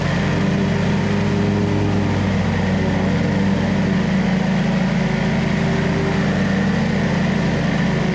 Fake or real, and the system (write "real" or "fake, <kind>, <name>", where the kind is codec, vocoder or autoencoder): real